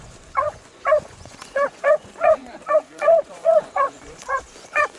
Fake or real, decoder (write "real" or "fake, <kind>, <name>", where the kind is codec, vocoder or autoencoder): fake, vocoder, Vocos